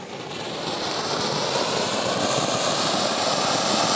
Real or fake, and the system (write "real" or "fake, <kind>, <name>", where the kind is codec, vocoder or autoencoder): real